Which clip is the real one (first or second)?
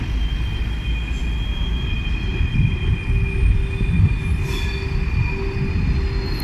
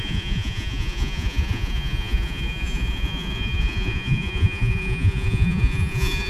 first